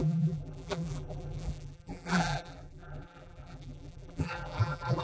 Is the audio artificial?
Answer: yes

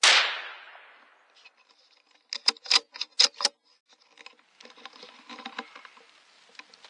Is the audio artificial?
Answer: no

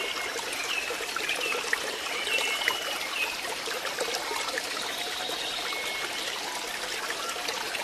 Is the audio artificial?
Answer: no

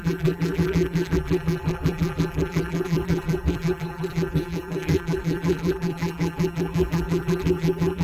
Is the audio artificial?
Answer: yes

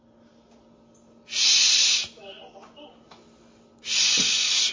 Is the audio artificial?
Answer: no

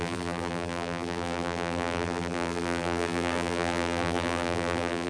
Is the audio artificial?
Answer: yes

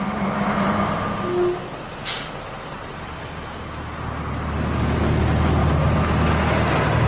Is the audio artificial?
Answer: no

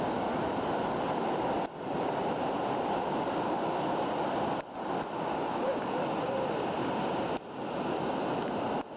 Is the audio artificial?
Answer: no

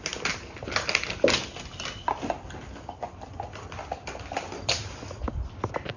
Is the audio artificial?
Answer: no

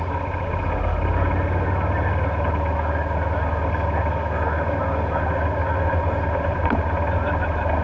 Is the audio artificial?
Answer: no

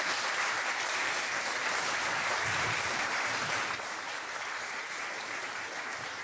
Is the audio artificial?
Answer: yes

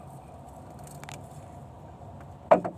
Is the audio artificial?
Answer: no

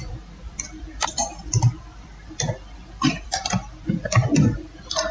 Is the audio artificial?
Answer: yes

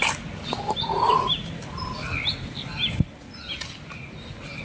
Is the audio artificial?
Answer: no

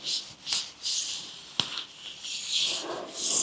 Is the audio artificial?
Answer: no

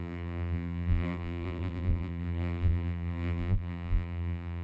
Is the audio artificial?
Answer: yes